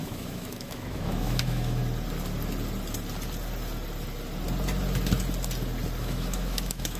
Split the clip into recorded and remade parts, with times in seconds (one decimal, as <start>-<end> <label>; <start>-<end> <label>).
0.0-1.8 remade; 1.8-6.0 recorded; 6.0-7.0 remade